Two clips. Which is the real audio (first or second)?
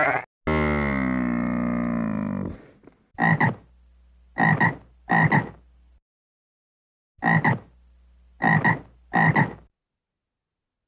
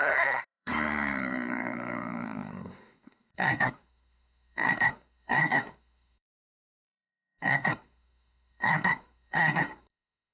first